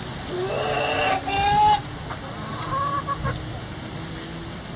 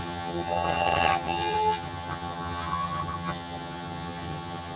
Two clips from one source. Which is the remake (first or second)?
second